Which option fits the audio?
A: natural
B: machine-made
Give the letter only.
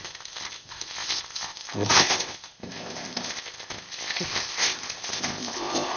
B